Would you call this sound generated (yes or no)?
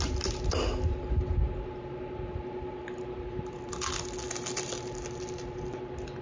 no